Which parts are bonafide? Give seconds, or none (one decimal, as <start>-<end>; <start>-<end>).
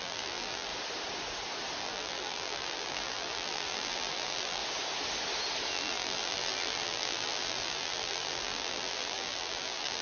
0.7-1.8; 4.6-5.7